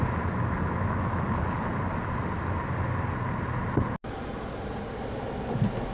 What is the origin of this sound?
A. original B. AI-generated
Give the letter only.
A